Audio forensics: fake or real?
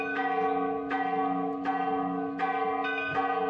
real